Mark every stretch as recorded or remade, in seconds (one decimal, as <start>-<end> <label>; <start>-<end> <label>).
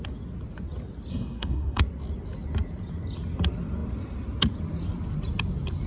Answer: 0.0-1.1 recorded; 1.1-1.8 remade; 1.8-5.9 recorded